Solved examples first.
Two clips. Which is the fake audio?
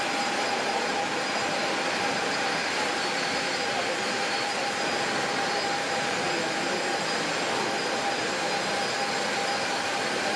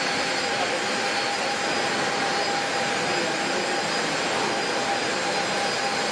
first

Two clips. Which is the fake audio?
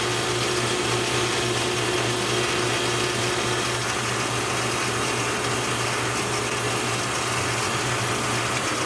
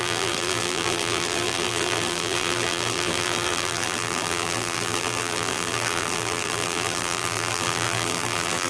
second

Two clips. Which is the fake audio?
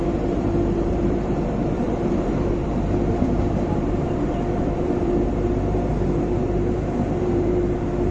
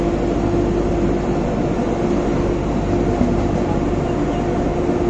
first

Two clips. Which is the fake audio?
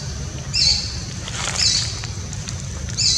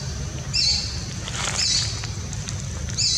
first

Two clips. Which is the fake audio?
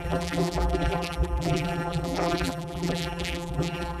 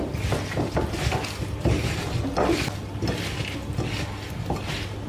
first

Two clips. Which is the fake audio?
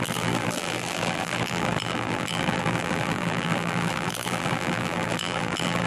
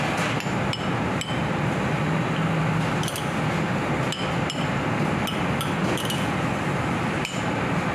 first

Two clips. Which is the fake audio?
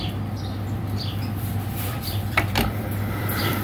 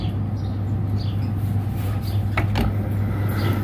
first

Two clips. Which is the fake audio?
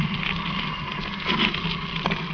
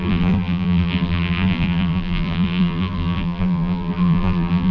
second